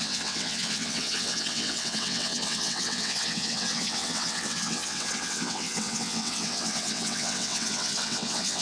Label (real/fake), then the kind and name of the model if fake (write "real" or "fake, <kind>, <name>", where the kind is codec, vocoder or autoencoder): fake, vocoder, WaveNeXt